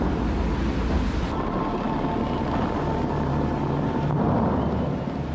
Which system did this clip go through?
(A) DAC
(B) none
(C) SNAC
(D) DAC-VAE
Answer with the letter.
B